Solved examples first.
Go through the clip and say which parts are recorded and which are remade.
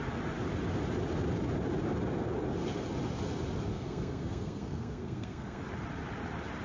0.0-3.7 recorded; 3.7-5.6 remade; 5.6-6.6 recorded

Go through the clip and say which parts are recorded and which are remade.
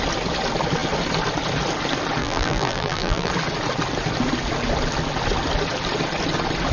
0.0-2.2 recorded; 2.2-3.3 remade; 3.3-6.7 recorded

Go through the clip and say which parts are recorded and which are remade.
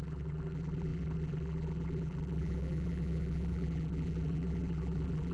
0.0-5.3 remade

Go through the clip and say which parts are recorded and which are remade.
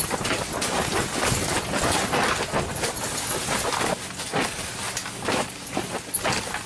0.0-6.7 recorded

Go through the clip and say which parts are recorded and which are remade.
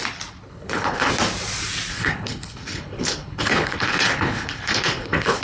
0.0-0.5 recorded; 0.5-1.1 remade; 1.1-1.9 recorded; 1.9-5.4 remade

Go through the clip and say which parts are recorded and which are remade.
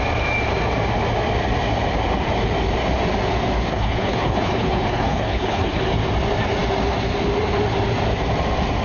0.0-3.7 recorded; 3.7-5.8 remade; 5.8-8.8 recorded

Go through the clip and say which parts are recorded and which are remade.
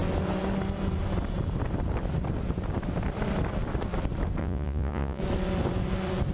0.0-4.4 recorded; 4.4-5.2 remade; 5.2-6.3 recorded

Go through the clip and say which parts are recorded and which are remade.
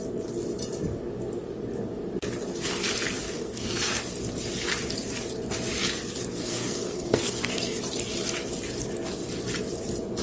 0.0-3.2 recorded; 3.2-4.0 remade; 4.0-6.3 recorded; 6.3-7.8 remade; 7.8-10.2 recorded